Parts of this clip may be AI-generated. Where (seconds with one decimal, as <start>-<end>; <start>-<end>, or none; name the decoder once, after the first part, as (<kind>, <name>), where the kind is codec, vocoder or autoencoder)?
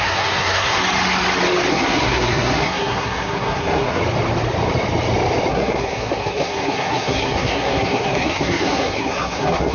0.0-0.8 (codec, SNAC); 1.7-4.0; 5.5-9.7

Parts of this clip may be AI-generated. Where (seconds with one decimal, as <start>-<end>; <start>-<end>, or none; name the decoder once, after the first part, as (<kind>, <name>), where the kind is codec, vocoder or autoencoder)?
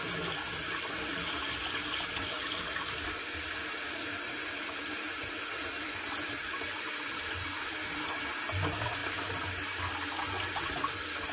none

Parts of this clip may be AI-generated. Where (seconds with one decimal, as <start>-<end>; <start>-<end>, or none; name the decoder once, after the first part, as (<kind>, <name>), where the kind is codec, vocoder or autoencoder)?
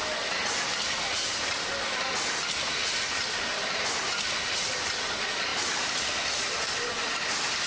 5.5-7.3 (vocoder, BigVGAN v2)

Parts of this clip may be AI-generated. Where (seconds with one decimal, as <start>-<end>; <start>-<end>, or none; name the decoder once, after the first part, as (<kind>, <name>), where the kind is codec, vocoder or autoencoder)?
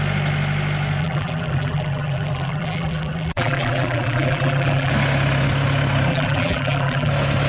1.0-4.9 (vocoder, BigVGAN v2); 6.1-7.1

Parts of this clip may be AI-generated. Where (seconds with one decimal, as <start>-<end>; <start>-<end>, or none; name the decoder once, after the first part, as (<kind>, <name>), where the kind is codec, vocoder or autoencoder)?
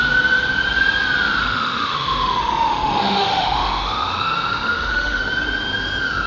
1.4-5.2 (autoencoder, DAC-VAE)